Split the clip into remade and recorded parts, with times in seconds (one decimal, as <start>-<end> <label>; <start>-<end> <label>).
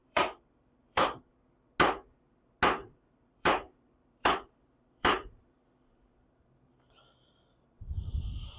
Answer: 0.0-1.2 remade; 1.2-2.8 recorded; 2.8-6.1 remade; 6.1-8.6 recorded